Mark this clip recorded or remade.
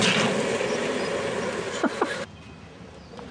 recorded